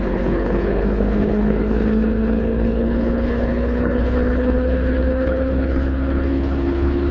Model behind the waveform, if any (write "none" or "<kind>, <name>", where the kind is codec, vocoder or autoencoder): codec, HILCodec